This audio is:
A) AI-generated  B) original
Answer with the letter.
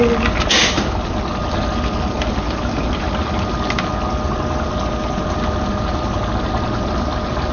B